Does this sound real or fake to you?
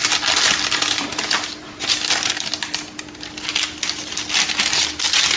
real